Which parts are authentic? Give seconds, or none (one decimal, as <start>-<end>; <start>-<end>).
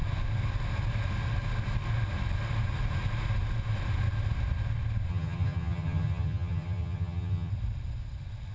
0.0-5.1; 7.5-8.5